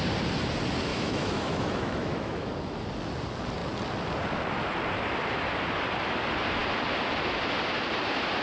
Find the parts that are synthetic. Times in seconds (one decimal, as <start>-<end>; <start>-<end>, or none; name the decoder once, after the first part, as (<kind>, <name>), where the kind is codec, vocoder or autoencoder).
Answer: 0.9-2.5 (autoencoder, DAC-VAE)